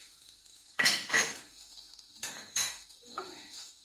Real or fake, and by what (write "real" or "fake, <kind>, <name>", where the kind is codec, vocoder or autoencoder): fake, autoencoder, DAC-VAE